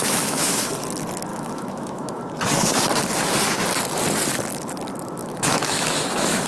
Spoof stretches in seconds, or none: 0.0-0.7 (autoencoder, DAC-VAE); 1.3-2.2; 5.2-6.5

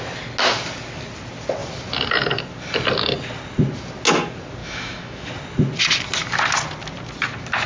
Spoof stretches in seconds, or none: 4.6-5.3 (autoencoder, DAC-VAE)

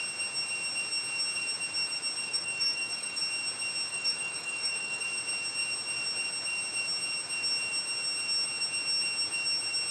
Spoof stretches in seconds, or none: 2.3-3.2 (autoencoder, DAC-VAE); 3.9-5.0

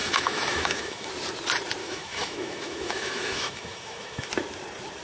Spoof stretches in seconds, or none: 0.0-1.1 (autoencoder, DAC-VAE); 1.8-4.3

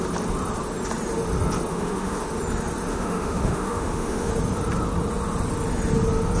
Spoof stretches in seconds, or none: 1.7-2.2 (autoencoder, DAC-VAE); 2.9-4.3

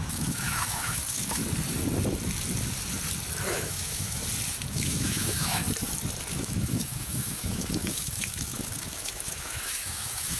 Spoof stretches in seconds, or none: 0.0-1.4 (autoencoder, DAC-VAE); 3.5-4.2; 4.7-5.6; 6.3-10.4

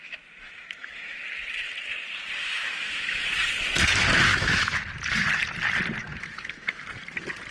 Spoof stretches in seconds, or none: 0.0-1.2 (autoencoder, DAC-VAE); 2.4-3.2; 4.3-4.8; 6.0-6.8